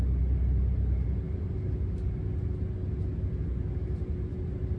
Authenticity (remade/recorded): recorded